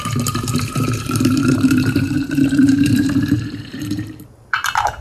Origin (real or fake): fake